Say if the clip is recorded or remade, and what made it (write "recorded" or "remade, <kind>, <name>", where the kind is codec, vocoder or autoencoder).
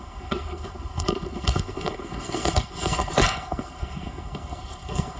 remade, codec, SNAC